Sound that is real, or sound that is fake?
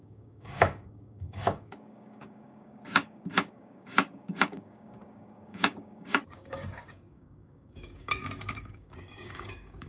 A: fake